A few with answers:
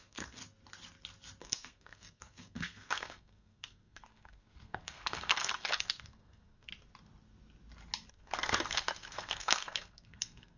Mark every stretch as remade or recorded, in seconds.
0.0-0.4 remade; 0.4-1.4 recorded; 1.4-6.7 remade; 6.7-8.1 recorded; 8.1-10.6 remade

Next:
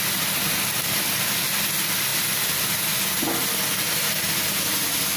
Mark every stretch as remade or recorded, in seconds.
0.0-5.2 recorded